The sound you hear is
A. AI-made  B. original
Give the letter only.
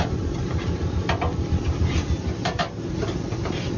B